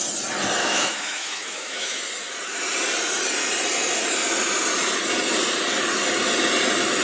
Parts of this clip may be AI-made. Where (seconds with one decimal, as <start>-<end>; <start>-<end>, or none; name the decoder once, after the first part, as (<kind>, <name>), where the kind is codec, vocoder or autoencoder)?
0.6-2.0 (autoencoder, DAC-VAE)